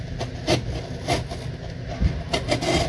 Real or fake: real